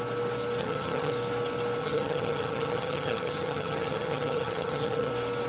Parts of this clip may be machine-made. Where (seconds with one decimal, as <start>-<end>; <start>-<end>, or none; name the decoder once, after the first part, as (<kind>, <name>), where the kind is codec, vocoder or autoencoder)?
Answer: 0.6-1.1 (vocoder, HiFi-GAN); 1.8-5.1